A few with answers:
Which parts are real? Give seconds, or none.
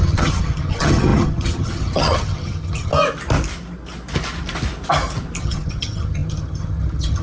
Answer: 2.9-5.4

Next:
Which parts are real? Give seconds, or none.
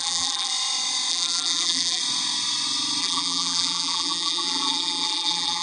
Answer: 0.5-1.1; 2.0-3.0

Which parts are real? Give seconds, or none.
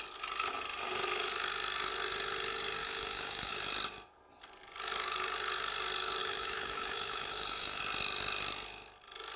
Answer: 0.0-2.8; 3.5-6.2; 7.8-9.4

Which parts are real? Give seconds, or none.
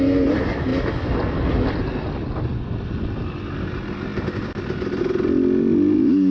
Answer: 0.0-6.3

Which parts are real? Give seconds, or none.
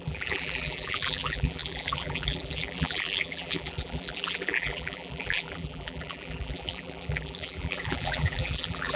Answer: none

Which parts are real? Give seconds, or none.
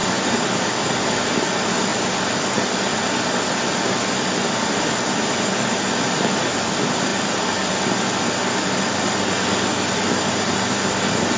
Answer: 0.0-11.4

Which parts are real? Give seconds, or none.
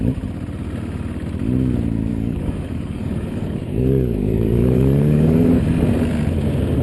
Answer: 0.0-2.1; 5.6-6.8